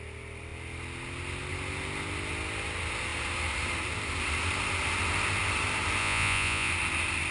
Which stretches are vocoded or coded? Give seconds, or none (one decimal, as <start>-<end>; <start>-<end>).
6.0-6.7